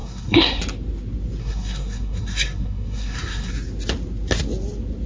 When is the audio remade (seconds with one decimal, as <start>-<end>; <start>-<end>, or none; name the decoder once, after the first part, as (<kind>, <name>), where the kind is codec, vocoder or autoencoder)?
0.0-0.6 (codec, SNAC); 1.4-3.5